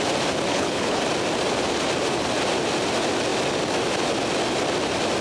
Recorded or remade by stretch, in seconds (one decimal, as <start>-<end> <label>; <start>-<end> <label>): 0.0-0.5 recorded; 0.5-1.0 remade; 1.0-5.2 recorded